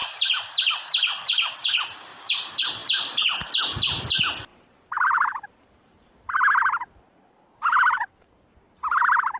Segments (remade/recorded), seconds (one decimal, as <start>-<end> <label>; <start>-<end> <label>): 0.0-1.5 remade; 1.5-2.8 recorded; 2.8-3.3 remade; 3.3-4.5 recorded; 4.5-8.5 remade; 8.5-9.4 recorded

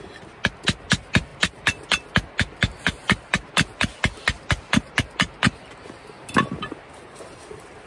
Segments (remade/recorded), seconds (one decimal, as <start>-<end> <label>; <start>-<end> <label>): 0.0-7.9 recorded

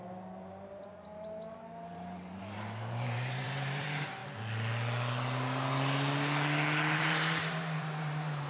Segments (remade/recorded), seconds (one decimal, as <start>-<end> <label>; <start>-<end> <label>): 0.0-4.2 remade; 4.2-7.0 recorded; 7.0-8.5 remade

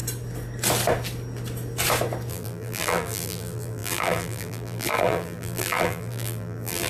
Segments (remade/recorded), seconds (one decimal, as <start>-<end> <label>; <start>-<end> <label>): 0.0-2.3 recorded; 2.3-6.9 remade

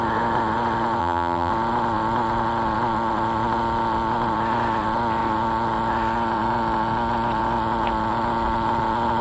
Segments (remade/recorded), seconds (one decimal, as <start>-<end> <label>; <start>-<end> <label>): 0.0-1.0 recorded; 1.0-1.5 remade; 1.5-9.2 recorded

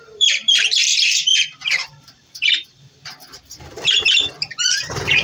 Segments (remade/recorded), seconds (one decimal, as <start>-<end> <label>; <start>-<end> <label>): 0.0-5.2 remade